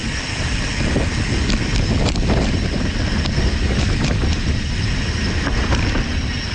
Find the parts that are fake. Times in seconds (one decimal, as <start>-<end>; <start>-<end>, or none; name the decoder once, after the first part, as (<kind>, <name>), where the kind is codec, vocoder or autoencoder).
0.0-0.6 (vocoder, BigVGAN v2); 1.7-5.6